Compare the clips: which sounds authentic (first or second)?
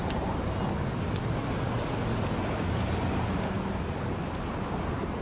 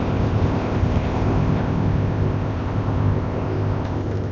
first